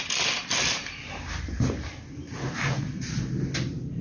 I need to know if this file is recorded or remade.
recorded